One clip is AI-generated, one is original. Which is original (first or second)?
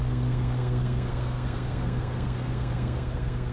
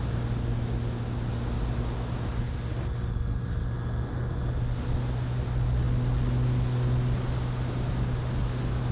second